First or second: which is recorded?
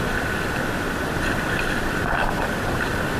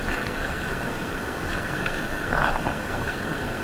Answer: first